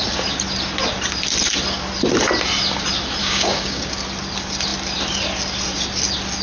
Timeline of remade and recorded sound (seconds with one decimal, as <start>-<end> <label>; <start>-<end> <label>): 0.0-3.2 recorded; 3.2-3.9 remade; 3.9-6.4 recorded